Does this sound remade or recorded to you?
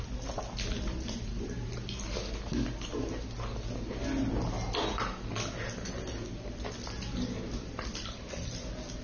recorded